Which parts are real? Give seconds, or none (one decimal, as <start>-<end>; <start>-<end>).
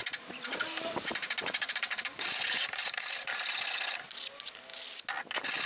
3.4-5.7